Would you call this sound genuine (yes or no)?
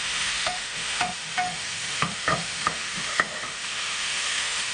no